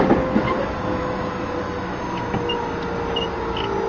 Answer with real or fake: real